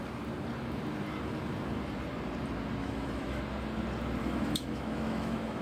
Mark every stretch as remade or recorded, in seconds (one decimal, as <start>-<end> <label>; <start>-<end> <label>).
0.0-2.8 recorded; 2.8-3.4 remade; 3.4-4.2 recorded; 4.2-5.6 remade

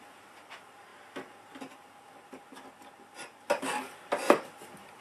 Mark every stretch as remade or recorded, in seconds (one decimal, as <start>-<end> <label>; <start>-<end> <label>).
0.0-5.0 recorded